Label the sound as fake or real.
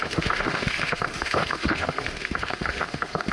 fake